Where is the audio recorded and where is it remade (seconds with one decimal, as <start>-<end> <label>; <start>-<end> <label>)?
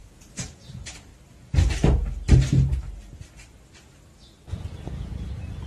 0.0-1.1 remade; 1.1-4.5 recorded; 4.5-5.7 remade